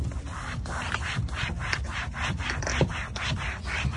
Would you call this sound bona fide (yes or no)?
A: yes